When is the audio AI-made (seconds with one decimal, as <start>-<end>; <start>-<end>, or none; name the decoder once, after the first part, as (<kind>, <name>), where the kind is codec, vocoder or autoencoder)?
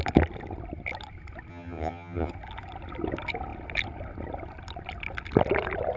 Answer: 1.5-2.3 (vocoder, HiFi-GAN)